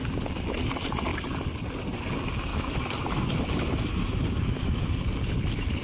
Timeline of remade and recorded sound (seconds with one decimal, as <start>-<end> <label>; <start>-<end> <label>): 0.0-2.5 recorded; 2.5-4.9 remade; 4.9-5.8 recorded